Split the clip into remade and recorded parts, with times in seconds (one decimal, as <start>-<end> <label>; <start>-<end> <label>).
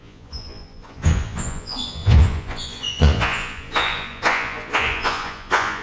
0.0-5.8 remade